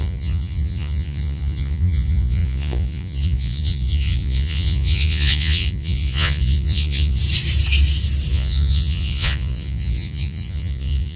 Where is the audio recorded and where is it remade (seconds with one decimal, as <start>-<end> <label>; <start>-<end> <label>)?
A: 0.0-7.2 remade; 7.2-8.3 recorded; 8.3-11.2 remade